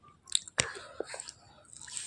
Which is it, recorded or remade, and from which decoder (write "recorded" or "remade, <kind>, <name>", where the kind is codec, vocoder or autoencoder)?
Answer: recorded